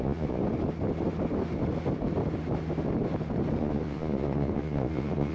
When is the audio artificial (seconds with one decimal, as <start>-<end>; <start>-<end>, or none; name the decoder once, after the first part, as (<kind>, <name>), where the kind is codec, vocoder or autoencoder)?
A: 0.0-0.4 (vocoder, Vocos); 3.6-5.3